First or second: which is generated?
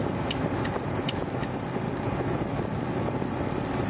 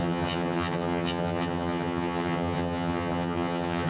second